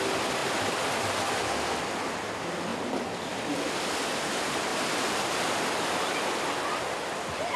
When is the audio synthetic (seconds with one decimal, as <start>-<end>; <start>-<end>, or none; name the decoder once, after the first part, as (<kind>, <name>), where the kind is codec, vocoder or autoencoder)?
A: none